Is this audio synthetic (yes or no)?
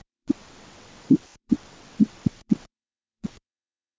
yes